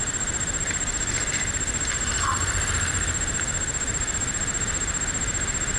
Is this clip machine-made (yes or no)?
no